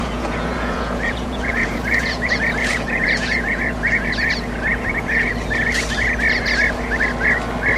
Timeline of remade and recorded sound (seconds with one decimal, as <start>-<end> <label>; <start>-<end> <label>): 0.0-4.3 remade; 4.3-4.7 recorded; 4.7-5.3 remade; 5.3-7.8 recorded